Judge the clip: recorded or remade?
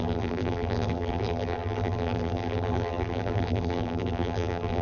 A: remade